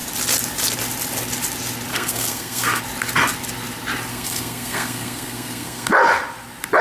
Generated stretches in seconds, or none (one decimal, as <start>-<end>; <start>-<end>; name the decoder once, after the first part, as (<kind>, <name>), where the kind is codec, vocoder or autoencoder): 1.9-2.8 (codec, SNAC); 4.1-5.9